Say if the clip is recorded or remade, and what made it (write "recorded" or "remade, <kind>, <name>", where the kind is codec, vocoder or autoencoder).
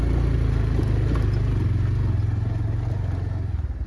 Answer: recorded